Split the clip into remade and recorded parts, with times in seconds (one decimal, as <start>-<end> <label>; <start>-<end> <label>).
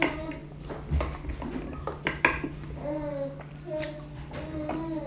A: 0.0-5.1 recorded